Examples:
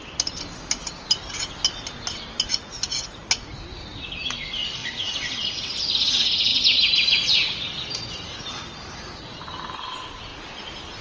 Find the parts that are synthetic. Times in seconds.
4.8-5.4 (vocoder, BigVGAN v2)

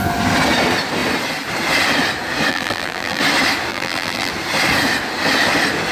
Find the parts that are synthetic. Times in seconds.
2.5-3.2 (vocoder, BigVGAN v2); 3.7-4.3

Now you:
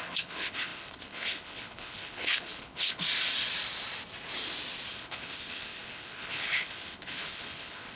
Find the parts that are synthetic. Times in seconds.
0.0-3.0 (codec, HILCodec); 4.9-8.0